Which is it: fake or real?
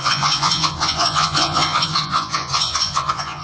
fake